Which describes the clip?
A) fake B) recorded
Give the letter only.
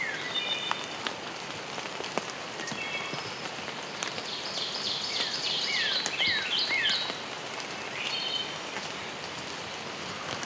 B